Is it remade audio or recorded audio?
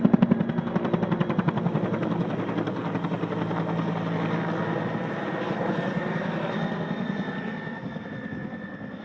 recorded